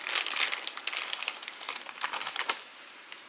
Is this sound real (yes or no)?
yes